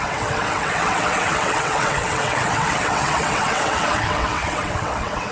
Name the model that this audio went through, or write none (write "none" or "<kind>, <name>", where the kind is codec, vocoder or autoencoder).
vocoder, WaveNeXt